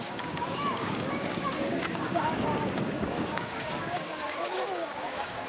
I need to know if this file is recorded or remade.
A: remade